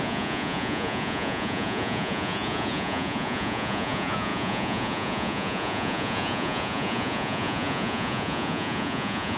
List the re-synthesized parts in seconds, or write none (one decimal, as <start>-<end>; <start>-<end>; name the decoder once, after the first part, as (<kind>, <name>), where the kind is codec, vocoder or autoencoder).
0.0-9.4 (vocoder, Vocos)